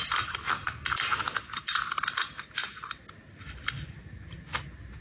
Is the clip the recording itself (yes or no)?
yes